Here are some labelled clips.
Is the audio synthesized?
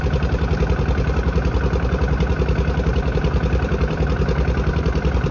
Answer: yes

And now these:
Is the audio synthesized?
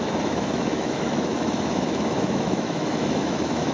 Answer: yes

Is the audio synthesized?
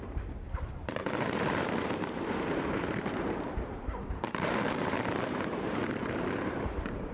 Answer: yes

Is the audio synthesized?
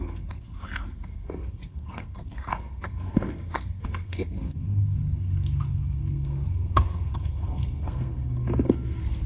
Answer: yes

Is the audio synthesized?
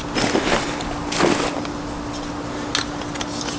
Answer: no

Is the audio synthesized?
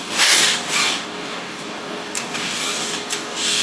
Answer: yes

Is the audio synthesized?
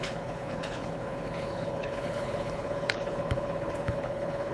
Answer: yes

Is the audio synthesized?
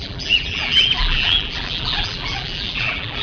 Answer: yes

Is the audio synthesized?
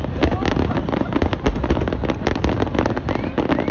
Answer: no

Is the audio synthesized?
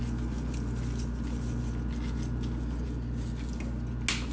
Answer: no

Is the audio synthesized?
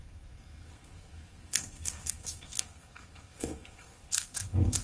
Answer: yes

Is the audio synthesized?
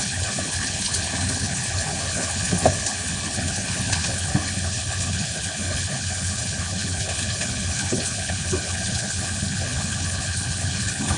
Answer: yes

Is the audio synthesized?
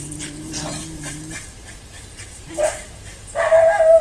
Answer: no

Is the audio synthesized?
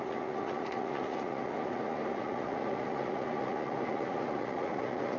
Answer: yes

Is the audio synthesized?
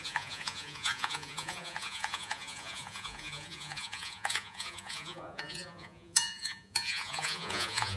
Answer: yes